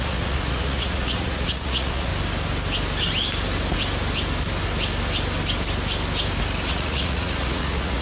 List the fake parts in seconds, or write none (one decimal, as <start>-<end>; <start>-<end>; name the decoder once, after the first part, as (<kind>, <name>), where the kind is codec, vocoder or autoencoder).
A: 0.0-2.1 (vocoder, Vocos); 6.7-8.0